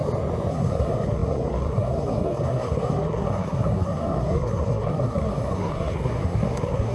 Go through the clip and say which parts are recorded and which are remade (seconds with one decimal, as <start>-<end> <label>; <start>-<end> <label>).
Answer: 0.0-0.5 recorded; 0.5-6.9 remade